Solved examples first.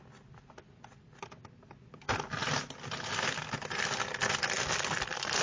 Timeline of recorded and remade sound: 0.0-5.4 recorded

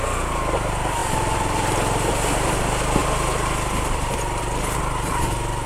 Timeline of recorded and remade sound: 0.0-5.7 recorded

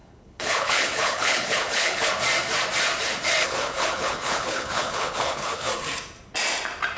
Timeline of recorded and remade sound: 0.0-2.1 remade; 2.1-3.4 recorded; 3.4-5.7 remade; 5.7-7.0 recorded